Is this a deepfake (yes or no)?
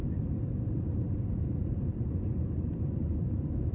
yes